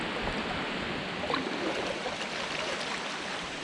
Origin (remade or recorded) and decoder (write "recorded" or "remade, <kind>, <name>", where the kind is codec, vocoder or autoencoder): recorded